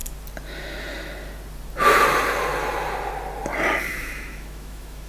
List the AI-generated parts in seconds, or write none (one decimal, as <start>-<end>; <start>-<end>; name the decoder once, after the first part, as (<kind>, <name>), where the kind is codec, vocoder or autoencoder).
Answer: 3.9-5.1 (autoencoder, DAC-VAE)